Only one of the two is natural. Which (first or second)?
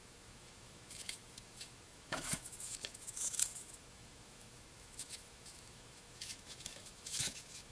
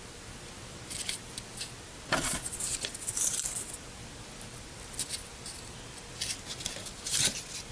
second